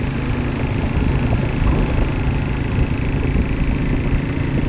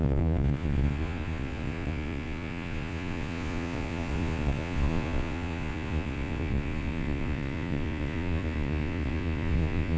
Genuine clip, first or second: first